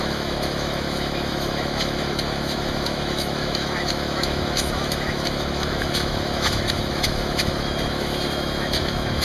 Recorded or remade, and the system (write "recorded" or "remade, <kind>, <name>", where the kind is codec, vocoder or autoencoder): remade, autoencoder, DAC-VAE